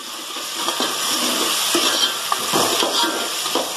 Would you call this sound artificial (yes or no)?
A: no